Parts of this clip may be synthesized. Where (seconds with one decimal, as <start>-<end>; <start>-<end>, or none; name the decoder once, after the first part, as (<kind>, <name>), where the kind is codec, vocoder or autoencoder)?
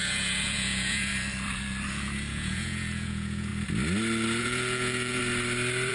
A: 0.0-1.1 (vocoder, Vocos); 2.3-3.5; 4.4-5.2